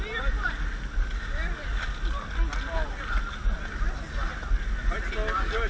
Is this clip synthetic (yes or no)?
no